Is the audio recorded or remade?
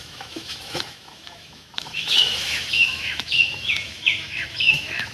remade